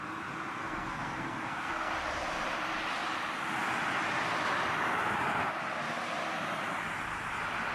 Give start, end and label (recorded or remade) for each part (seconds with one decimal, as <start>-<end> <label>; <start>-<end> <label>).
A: 0.0-0.5 recorded; 0.5-1.9 remade; 1.9-7.7 recorded